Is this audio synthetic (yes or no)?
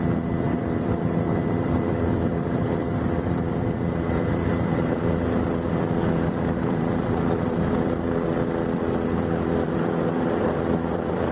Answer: yes